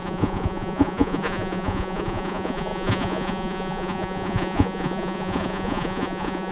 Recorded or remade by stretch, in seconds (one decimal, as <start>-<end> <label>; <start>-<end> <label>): 0.0-6.5 remade